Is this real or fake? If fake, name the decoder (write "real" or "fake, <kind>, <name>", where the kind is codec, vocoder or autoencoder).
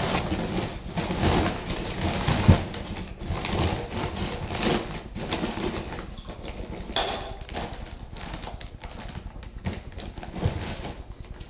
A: real